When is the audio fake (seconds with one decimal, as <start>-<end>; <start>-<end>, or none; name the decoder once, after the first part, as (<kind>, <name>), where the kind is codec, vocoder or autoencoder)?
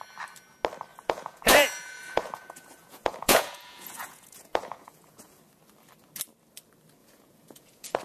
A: 0.9-5.4 (vocoder, Vocos); 7.0-8.0